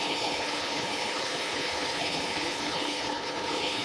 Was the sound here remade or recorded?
remade